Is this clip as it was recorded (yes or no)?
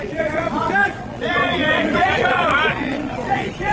no